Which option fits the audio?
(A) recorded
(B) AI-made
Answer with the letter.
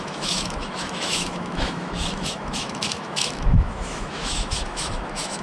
B